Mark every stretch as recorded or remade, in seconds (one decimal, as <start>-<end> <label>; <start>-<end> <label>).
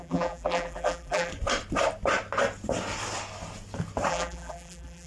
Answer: 0.0-1.3 remade; 1.3-4.1 recorded; 4.1-5.1 remade